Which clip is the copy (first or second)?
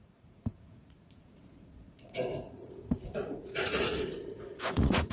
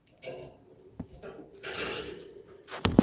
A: first